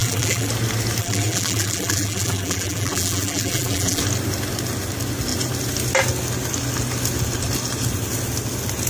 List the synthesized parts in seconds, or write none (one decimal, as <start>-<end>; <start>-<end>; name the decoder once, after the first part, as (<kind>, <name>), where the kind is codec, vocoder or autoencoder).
0.0-0.5 (vocoder, BigVGAN v2); 1.0-4.0